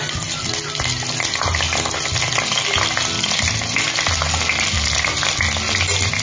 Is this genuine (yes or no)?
yes